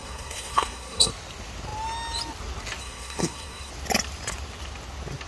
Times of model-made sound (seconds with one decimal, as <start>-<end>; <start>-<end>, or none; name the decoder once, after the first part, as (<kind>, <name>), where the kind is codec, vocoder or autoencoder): 0.0-1.1 (codec, SNAC); 2.8-3.7